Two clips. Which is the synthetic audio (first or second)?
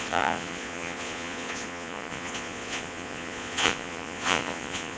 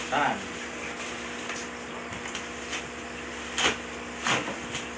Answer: first